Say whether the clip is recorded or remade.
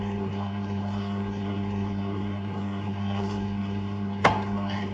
remade